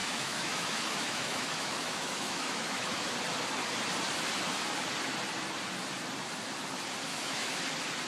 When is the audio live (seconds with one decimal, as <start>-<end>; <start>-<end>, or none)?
3.1-7.1; 7.6-8.1